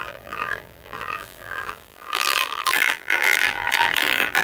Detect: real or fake fake